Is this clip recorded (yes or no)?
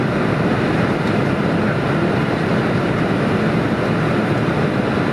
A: yes